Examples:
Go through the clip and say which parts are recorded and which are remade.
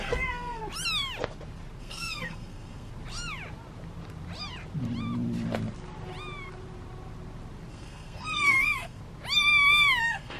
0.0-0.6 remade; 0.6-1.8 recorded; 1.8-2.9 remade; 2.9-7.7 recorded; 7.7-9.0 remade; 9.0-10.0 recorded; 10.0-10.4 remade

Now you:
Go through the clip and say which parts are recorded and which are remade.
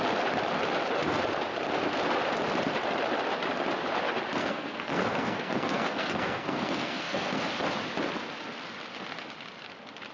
0.0-4.4 recorded; 4.4-7.5 remade; 7.5-10.1 recorded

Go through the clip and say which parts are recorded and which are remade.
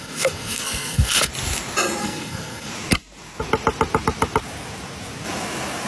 0.0-1.3 remade; 1.3-2.0 recorded; 2.0-2.7 remade; 2.7-5.9 recorded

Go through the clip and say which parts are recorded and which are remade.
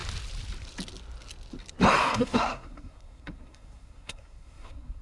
0.0-2.0 recorded; 2.0-5.0 remade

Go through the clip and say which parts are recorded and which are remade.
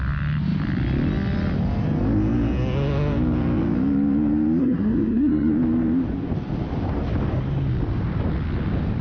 0.0-4.6 recorded; 4.6-5.5 remade; 5.5-9.0 recorded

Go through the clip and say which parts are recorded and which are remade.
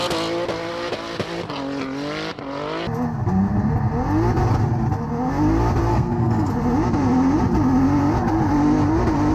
0.0-5.9 recorded; 5.9-6.5 remade; 6.5-9.3 recorded